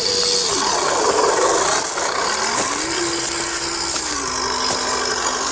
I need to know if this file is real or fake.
real